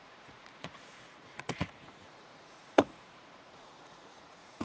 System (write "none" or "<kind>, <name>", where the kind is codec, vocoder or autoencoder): vocoder, Vocos